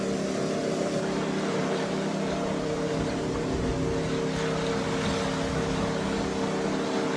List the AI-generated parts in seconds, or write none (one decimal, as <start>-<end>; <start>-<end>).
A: 0.6-3.7